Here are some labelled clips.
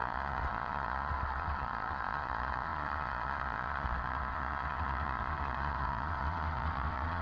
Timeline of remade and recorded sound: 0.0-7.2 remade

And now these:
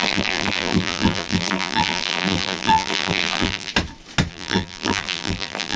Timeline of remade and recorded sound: 0.0-3.7 remade; 3.7-4.3 recorded; 4.3-5.8 remade

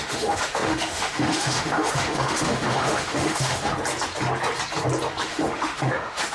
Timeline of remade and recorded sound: 0.0-3.7 remade; 3.7-5.2 recorded; 5.2-6.3 remade

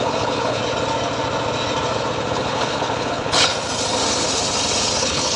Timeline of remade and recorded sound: 0.0-0.6 remade; 0.6-2.3 recorded; 2.3-3.5 remade; 3.5-5.0 recorded; 5.0-5.4 remade

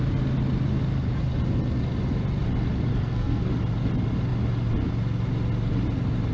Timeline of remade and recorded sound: 0.0-2.9 recorded; 2.9-3.5 remade; 3.5-6.3 recorded